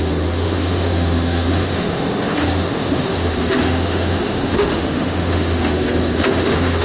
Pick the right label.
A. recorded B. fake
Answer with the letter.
B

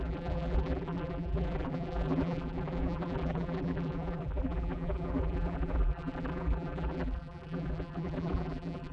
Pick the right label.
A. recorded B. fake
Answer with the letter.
B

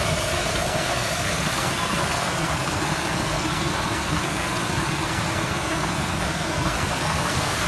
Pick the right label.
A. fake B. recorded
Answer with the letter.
A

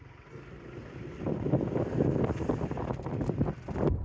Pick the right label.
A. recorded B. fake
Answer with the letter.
B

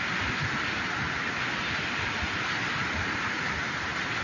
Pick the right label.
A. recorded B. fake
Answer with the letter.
A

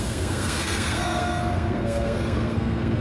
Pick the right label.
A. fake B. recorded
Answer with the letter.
A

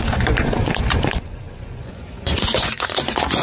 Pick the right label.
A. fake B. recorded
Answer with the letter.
A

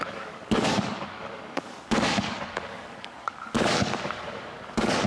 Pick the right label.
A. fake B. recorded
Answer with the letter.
A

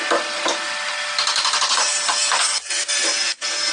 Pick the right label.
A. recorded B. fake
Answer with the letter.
A